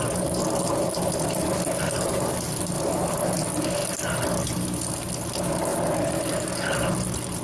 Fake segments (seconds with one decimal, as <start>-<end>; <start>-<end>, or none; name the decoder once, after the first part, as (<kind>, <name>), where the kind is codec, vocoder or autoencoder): none